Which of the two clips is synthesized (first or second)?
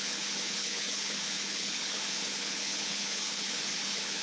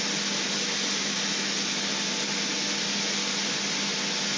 first